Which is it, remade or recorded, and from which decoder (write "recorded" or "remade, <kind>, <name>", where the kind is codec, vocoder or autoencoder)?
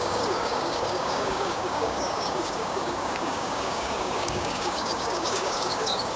remade, codec, DAC